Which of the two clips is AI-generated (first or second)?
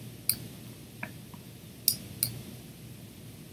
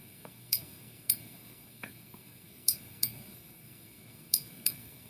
second